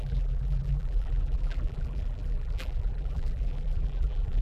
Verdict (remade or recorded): remade